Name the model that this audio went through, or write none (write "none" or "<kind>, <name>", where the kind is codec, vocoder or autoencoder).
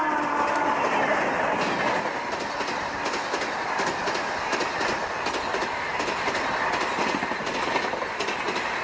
none